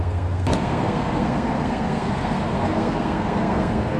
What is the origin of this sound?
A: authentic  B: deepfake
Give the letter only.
B